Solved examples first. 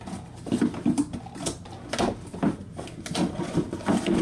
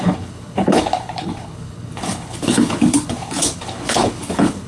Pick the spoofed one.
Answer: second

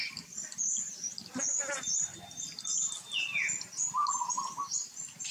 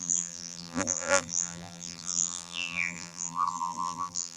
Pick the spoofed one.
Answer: second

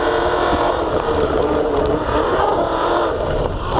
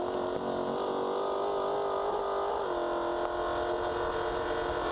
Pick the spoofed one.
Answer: first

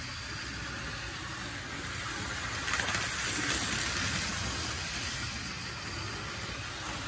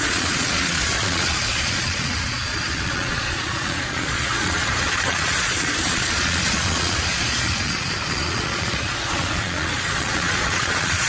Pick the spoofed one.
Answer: second